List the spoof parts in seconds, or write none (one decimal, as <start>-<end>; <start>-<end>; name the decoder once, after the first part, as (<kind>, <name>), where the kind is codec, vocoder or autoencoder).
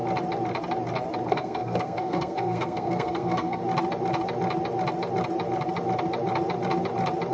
1.3-3.6 (codec, SNAC)